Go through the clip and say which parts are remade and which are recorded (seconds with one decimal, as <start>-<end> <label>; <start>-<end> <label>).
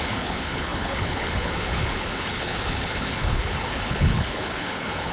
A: 0.0-5.1 remade